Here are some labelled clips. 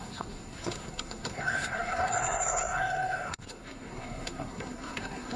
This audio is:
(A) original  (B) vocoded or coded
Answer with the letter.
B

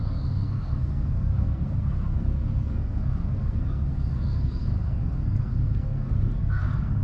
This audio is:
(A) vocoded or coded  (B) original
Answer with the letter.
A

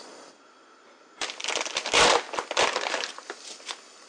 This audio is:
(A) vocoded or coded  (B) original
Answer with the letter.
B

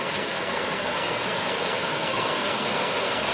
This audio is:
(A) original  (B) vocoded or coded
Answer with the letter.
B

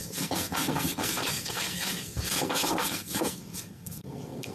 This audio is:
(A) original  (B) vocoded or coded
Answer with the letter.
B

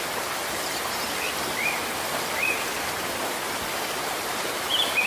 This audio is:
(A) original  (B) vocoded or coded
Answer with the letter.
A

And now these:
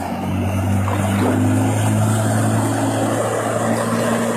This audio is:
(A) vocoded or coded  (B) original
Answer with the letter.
B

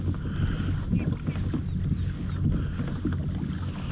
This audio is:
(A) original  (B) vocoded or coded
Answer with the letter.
A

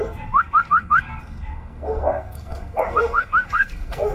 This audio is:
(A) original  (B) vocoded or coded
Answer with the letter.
B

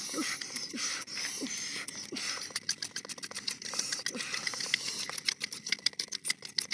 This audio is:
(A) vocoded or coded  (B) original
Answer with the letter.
B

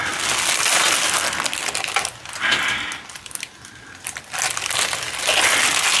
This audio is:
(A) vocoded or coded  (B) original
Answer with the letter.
B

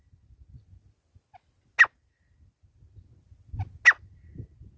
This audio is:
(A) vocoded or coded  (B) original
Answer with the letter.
B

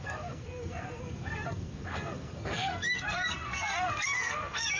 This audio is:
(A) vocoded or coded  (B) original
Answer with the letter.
A